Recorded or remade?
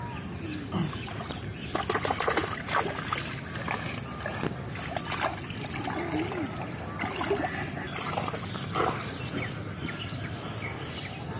recorded